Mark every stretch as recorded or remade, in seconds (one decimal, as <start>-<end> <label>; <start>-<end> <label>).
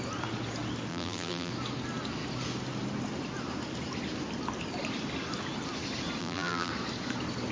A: 0.0-0.9 recorded; 0.9-1.5 remade; 1.5-6.2 recorded; 6.2-6.7 remade; 6.7-7.5 recorded